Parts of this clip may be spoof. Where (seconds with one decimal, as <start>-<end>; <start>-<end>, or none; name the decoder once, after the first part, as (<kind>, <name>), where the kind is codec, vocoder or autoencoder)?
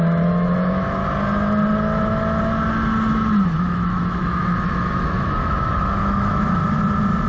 0.0-1.0 (autoencoder, DAC-VAE); 3.6-6.6